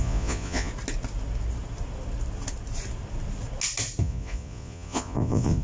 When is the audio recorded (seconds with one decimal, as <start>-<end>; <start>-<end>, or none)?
0.7-4.0